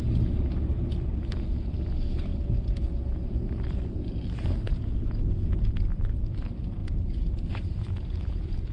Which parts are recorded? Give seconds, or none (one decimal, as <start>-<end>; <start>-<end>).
6.8-7.5